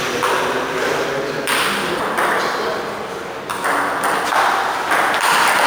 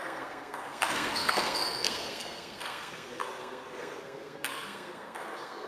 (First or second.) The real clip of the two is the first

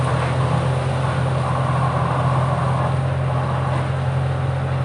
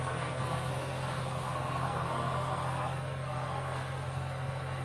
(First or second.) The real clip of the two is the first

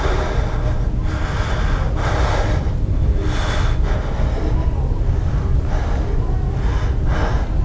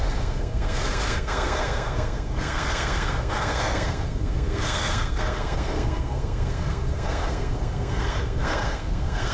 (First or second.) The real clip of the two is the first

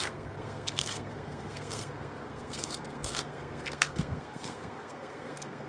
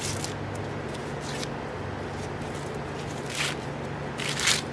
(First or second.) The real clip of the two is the second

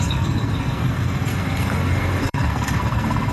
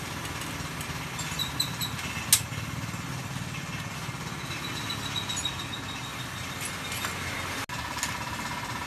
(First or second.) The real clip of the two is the second